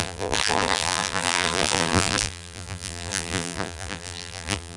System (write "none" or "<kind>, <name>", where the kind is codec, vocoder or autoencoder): vocoder, BigVGAN v2